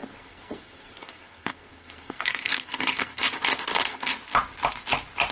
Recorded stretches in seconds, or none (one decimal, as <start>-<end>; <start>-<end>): 3.2-3.7; 4.2-5.3